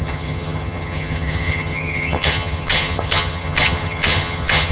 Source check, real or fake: fake